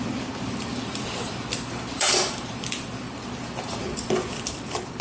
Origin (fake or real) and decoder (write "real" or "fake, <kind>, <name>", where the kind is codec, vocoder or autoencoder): fake, vocoder, BigVGAN v2